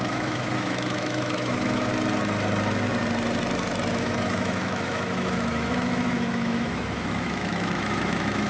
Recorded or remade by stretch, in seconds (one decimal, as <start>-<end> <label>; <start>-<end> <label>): 0.0-1.9 remade; 1.9-3.9 recorded; 3.9-8.5 remade